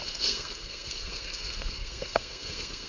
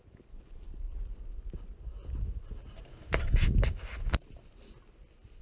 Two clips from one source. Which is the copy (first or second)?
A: first